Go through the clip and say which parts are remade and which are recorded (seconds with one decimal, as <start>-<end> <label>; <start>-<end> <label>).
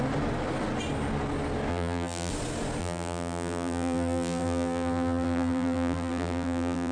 0.0-1.7 recorded; 1.7-2.3 remade; 2.3-2.8 recorded; 2.8-6.9 remade